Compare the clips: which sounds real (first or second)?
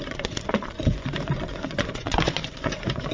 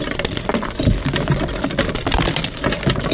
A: second